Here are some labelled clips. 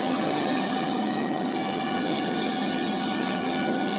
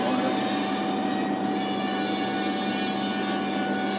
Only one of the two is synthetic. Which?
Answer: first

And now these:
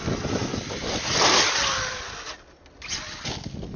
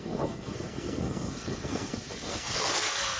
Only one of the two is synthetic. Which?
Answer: second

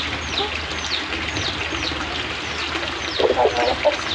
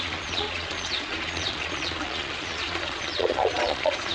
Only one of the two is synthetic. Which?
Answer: second